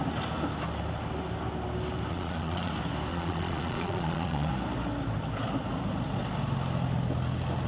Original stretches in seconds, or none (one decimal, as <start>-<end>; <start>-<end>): 0.0-2.1; 2.7-3.1; 4.5-7.7